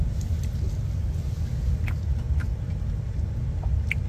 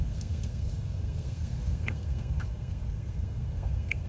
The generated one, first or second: second